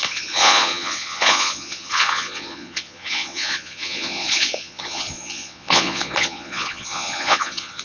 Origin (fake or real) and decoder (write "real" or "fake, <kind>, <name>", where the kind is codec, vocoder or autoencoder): fake, vocoder, Vocos